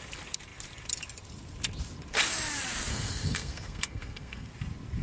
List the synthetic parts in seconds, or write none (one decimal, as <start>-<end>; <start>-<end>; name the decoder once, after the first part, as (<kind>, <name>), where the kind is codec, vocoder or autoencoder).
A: 2.9-4.5 (codec, SNAC)